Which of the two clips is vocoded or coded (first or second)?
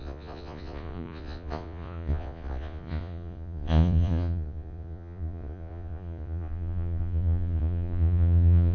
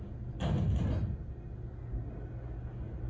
first